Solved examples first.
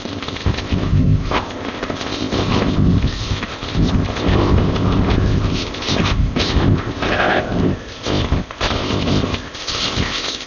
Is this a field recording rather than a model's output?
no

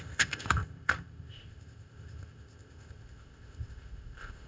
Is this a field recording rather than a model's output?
no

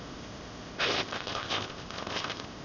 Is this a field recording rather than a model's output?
no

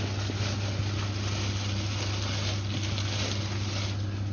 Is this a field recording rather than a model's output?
yes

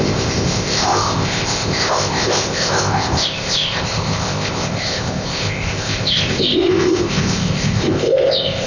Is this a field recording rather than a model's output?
no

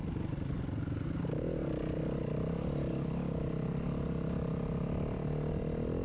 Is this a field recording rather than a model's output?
yes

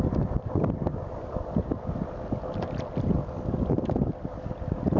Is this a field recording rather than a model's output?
yes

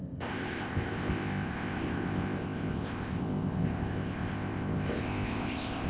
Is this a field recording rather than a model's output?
no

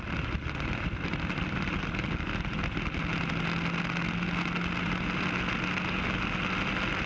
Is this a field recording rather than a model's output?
yes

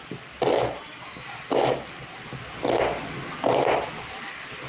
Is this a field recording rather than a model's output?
yes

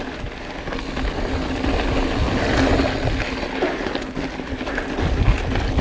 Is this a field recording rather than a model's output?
yes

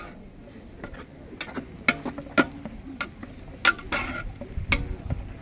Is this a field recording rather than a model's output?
yes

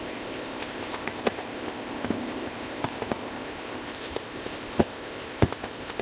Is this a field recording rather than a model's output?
no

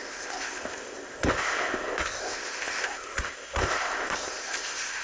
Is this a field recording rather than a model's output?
no